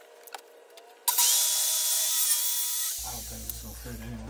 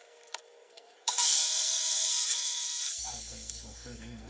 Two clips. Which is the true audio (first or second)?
first